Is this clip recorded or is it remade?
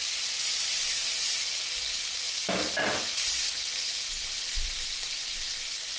recorded